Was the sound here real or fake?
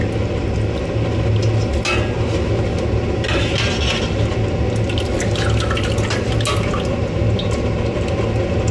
real